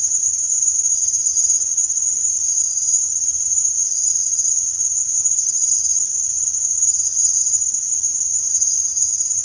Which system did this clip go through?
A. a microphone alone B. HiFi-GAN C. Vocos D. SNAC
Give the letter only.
B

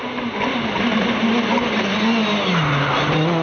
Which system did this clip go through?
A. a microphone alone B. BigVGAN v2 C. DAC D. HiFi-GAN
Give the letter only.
A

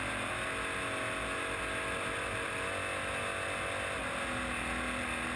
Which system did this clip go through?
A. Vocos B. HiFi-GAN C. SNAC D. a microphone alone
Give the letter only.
D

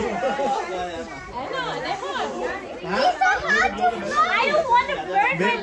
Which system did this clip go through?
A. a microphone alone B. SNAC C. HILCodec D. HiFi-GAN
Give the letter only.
A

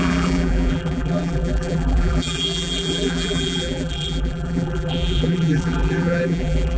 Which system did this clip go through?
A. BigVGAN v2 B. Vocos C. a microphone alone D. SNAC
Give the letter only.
A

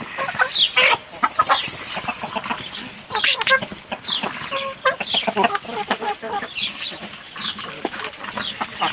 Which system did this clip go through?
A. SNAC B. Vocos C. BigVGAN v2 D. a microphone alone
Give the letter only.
D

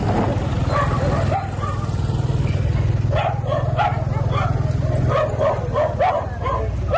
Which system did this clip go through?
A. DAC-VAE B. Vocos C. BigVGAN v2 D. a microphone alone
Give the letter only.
D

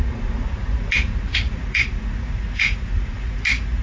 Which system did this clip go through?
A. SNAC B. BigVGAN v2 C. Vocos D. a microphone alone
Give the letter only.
C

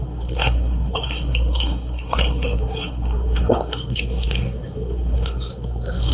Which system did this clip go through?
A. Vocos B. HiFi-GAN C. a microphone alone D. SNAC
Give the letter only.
D